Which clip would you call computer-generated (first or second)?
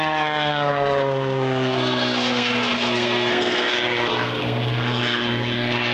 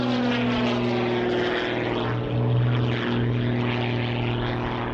first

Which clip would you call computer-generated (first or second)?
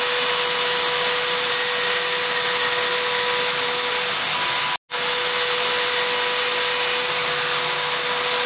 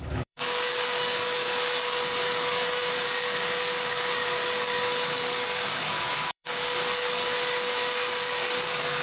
second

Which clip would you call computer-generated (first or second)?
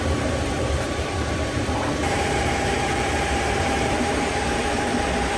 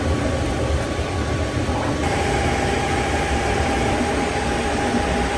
first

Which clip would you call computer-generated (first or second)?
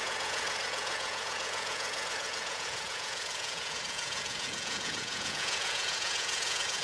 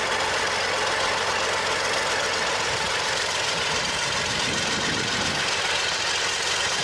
first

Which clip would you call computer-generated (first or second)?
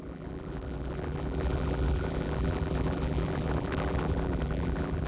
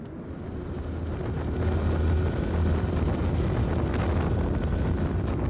first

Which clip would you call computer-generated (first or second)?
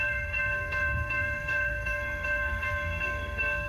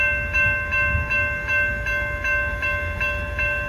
first